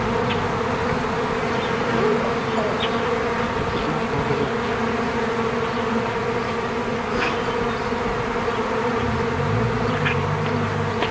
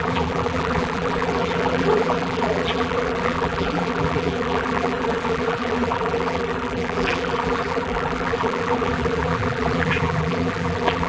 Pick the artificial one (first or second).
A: second